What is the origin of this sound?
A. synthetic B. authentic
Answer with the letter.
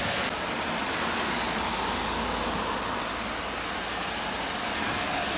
B